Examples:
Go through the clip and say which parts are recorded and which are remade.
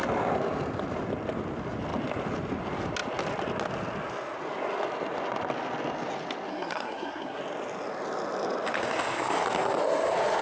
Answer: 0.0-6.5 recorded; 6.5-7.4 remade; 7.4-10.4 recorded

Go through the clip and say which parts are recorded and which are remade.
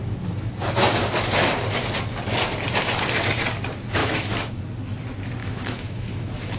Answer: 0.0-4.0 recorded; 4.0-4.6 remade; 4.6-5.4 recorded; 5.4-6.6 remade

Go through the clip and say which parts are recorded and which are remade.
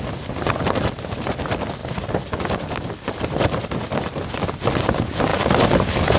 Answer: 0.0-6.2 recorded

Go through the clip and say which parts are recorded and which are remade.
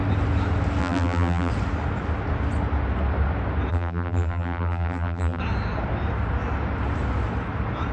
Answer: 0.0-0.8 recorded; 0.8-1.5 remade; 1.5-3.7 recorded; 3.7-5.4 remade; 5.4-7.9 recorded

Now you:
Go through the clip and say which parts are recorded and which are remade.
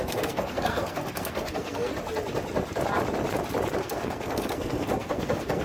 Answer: 0.0-1.9 remade; 1.9-3.8 recorded; 3.8-5.6 remade